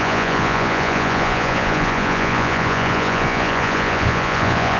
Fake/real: fake